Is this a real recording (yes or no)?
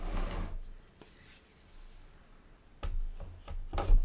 yes